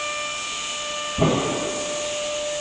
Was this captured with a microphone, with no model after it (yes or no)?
yes